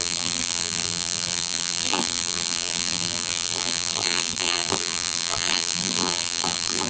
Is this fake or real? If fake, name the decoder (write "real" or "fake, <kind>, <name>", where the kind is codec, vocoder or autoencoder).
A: fake, vocoder, BigVGAN v2